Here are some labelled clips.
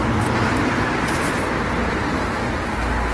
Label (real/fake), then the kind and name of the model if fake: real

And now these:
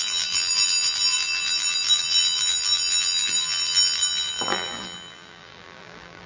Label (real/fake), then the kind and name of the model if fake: fake, vocoder, BigVGAN v2